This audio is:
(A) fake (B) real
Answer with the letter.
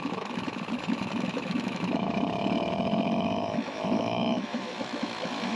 A